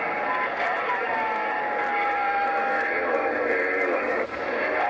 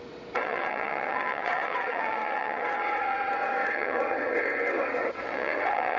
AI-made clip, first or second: second